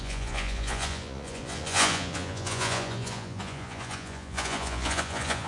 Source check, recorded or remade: remade